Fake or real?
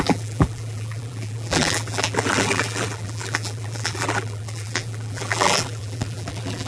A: fake